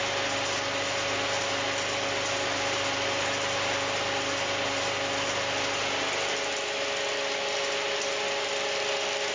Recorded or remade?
recorded